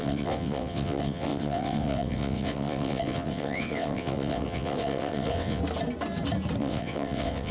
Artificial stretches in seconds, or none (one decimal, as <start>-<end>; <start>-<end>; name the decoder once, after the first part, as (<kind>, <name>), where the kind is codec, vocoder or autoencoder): 0.0-5.6 (vocoder, WaveNeXt); 6.6-7.5